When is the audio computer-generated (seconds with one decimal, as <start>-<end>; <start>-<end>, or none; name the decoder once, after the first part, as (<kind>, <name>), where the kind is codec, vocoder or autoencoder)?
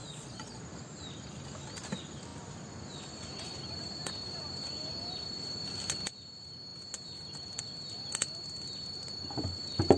0.0-0.6 (vocoder, Vocos)